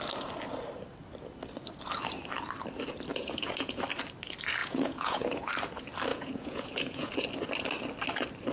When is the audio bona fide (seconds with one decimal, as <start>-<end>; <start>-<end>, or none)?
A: 0.0-3.1; 3.8-4.6; 5.5-6.1; 7.1-8.5